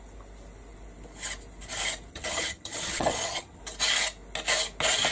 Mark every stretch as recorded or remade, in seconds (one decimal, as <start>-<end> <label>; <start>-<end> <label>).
0.0-2.1 recorded; 2.1-3.6 remade; 3.6-5.1 recorded